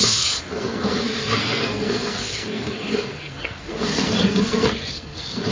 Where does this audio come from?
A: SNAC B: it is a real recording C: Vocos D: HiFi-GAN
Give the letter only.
A